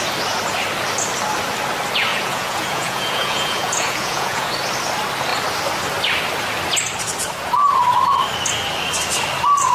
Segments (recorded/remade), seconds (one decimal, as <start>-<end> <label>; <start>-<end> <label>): 0.0-2.1 recorded; 2.1-4.5 remade; 4.5-9.7 recorded